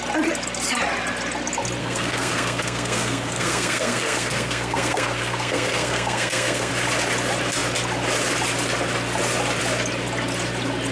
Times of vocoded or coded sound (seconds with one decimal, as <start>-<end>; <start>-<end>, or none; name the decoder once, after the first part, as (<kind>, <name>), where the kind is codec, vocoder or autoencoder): 1.8-6.7 (codec, SNAC)